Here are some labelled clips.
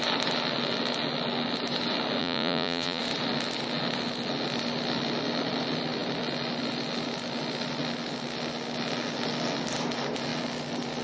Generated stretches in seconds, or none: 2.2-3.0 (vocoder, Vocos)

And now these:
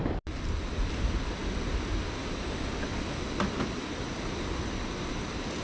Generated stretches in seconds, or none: none

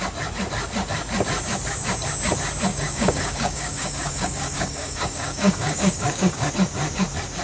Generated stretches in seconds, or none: 2.7-6.5 (codec, DAC)

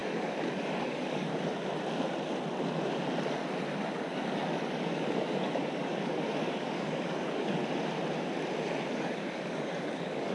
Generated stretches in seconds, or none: 0.0-1.3 (codec, DAC); 3.9-7.6; 8.9-10.3

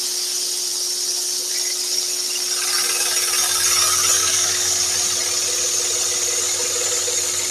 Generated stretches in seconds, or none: 4.2-4.8 (codec, DAC)